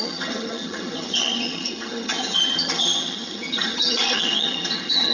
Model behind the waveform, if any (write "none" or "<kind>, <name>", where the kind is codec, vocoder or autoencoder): vocoder, HiFi-GAN